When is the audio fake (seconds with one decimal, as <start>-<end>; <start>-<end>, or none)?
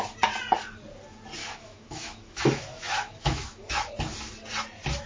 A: 1.4-3.9